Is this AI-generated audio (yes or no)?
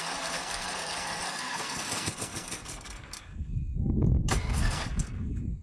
yes